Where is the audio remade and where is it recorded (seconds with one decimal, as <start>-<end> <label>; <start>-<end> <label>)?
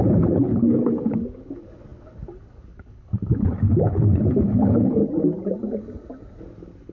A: 0.0-5.0 remade; 5.0-6.4 recorded; 6.4-6.9 remade